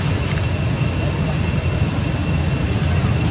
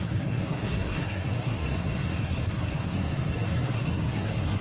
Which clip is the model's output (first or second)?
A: second